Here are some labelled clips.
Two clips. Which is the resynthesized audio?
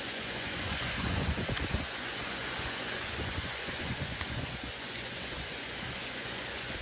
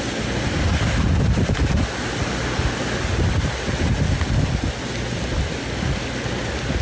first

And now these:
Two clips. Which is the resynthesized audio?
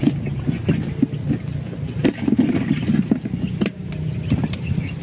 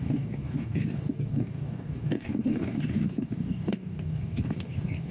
second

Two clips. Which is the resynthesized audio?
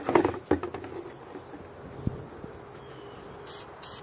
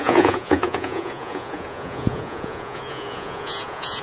second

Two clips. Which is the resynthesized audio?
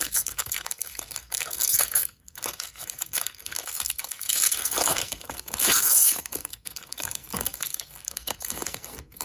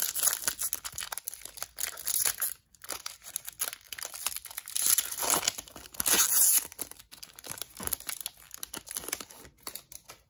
first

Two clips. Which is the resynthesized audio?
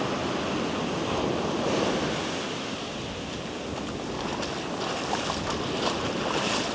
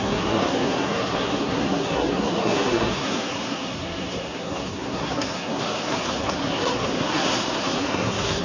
second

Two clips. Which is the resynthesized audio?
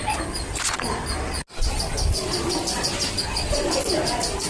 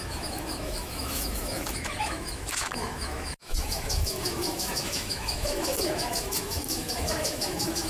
second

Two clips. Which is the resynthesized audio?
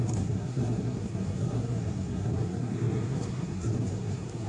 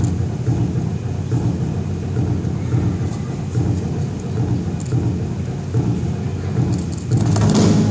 first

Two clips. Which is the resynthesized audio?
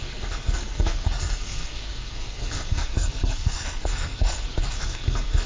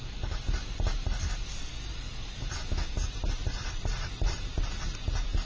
first